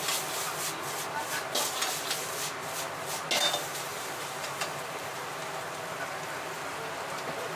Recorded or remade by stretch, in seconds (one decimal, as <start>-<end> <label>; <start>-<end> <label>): 0.0-3.9 recorded; 3.9-5.3 remade; 5.3-7.6 recorded